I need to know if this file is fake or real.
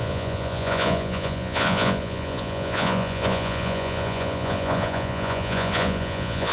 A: fake